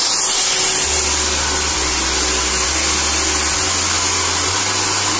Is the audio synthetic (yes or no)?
no